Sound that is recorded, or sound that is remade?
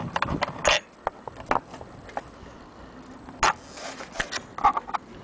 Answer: recorded